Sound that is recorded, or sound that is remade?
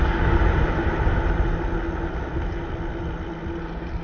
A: recorded